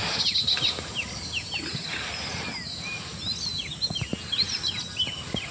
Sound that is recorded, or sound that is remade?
recorded